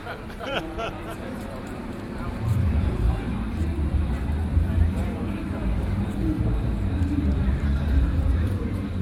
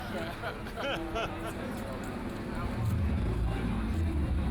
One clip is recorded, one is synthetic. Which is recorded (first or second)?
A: second